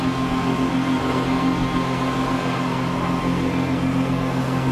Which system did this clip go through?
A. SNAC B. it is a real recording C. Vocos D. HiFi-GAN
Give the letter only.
A